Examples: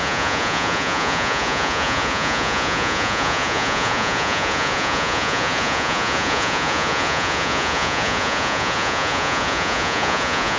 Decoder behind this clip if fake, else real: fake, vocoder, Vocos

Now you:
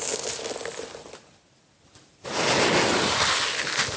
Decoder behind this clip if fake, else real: real